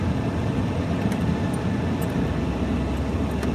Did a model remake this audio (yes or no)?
no